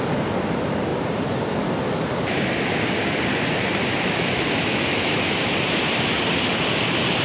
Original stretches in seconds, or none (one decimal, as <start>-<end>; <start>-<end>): 0.0-3.9; 4.8-7.2